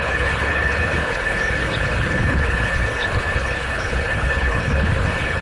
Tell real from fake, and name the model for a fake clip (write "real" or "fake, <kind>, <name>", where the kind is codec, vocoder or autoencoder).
fake, codec, HILCodec